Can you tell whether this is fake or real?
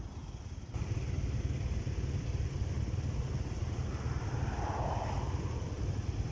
fake